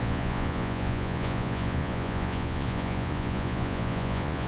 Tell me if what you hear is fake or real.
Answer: fake